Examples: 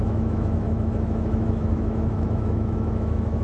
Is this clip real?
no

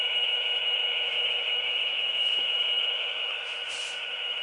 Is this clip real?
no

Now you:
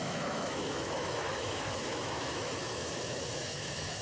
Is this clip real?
no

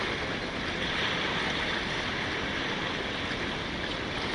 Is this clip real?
yes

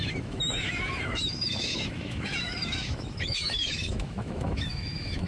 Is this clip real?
no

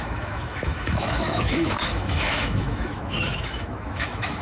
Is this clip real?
no